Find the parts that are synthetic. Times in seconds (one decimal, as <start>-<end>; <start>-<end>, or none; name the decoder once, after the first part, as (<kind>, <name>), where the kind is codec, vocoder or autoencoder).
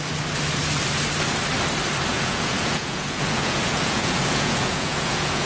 2.1-5.5 (vocoder, Vocos)